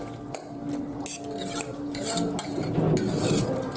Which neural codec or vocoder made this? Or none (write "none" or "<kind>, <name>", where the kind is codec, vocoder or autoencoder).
none